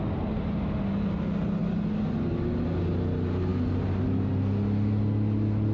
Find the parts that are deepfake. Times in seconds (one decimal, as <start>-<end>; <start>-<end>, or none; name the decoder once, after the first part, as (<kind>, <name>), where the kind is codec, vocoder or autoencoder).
none

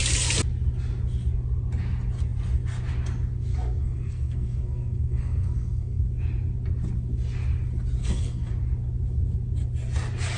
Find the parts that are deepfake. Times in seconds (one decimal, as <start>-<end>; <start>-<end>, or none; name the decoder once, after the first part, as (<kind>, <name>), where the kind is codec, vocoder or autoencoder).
3.5-6.0 (codec, SNAC); 8.0-8.5